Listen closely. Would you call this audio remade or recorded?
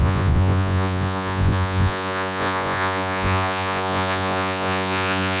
remade